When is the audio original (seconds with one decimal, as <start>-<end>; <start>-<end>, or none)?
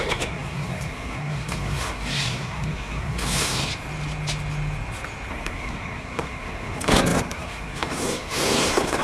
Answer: 3.7-5.3